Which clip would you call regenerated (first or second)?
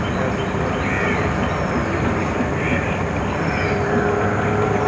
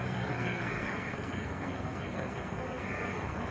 second